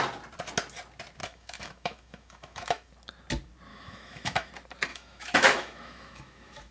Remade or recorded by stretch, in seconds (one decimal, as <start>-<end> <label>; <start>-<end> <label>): 0.0-1.2 recorded; 1.2-2.9 remade; 2.9-3.7 recorded; 3.7-4.5 remade; 4.5-4.9 recorded; 4.9-6.7 remade